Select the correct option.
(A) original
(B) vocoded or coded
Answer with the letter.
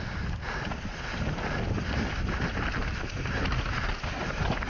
A